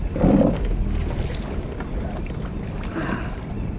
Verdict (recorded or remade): recorded